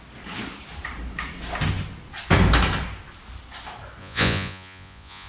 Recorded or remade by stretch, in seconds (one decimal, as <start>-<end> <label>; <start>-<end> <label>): 0.0-4.0 recorded; 4.0-5.3 remade